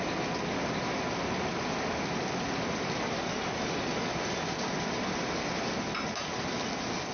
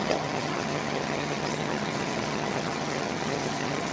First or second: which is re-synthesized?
second